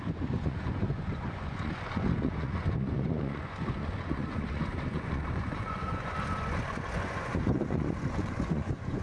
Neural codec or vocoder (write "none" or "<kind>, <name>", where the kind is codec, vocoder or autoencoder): vocoder, Vocos